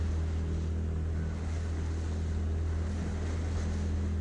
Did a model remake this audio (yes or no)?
no